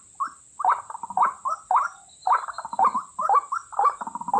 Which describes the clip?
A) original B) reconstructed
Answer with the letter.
A